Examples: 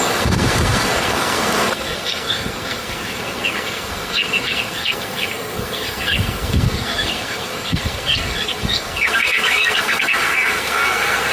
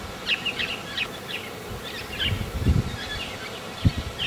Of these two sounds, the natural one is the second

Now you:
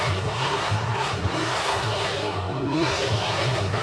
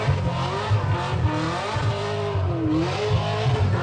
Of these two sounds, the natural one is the second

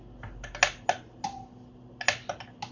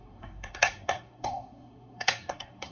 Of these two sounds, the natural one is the first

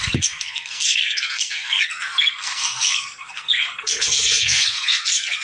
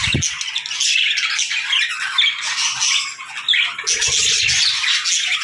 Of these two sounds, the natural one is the second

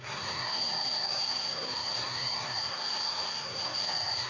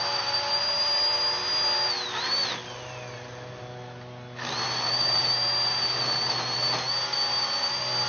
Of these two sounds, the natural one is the second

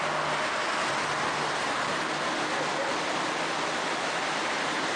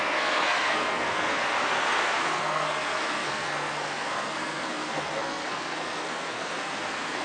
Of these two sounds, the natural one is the first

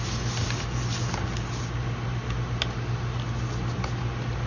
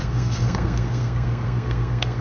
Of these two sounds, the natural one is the first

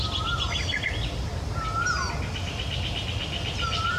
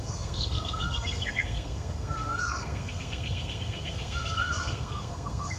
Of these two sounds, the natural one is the first